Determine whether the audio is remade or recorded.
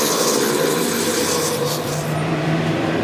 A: remade